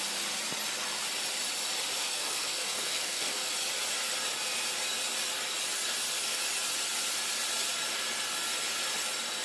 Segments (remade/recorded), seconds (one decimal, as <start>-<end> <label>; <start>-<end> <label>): 0.0-2.0 recorded; 2.0-3.5 remade; 3.5-9.4 recorded

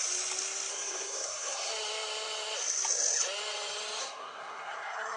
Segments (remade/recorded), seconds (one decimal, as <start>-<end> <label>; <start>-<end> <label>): 0.0-0.7 recorded; 0.7-1.7 remade; 1.7-4.0 recorded; 4.0-5.2 remade

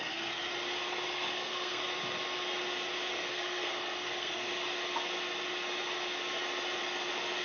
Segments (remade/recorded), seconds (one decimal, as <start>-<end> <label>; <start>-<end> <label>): 0.0-0.5 remade; 0.5-1.1 recorded; 1.1-1.8 remade; 1.8-3.1 recorded; 3.1-4.5 remade; 4.5-7.4 recorded

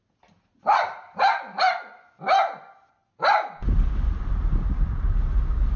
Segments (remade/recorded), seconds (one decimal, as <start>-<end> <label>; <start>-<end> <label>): 0.0-5.8 recorded

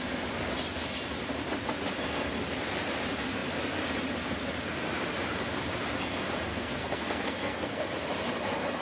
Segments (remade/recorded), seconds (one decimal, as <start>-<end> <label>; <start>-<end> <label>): 0.0-6.5 recorded; 6.5-7.9 remade; 7.9-8.8 recorded

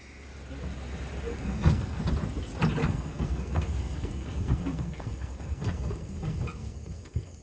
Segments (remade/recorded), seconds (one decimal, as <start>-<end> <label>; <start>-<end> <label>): 0.0-1.3 recorded; 1.3-2.0 remade; 2.0-2.8 recorded; 2.8-7.4 remade

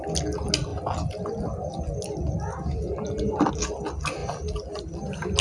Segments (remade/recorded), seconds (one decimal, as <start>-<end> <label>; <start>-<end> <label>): 0.0-5.4 recorded